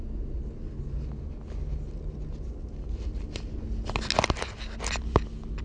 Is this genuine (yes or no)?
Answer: yes